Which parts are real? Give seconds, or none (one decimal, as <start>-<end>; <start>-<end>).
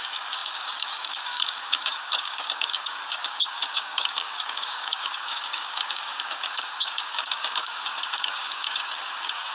none